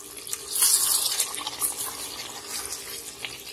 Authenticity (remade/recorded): recorded